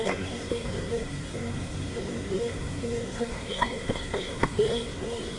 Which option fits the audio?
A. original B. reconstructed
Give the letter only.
B